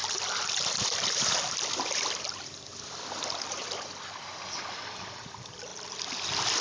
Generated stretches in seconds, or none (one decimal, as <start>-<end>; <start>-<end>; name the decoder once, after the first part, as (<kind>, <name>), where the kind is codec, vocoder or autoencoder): 0.0-5.7 (vocoder, BigVGAN v2)